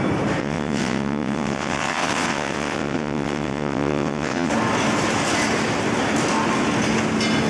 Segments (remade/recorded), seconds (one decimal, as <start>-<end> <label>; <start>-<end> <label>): 0.0-0.4 recorded; 0.4-4.5 remade; 4.5-7.5 recorded